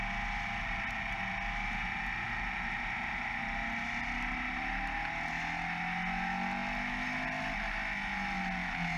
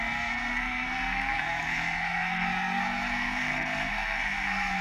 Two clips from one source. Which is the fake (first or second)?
second